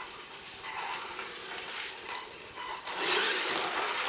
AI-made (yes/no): no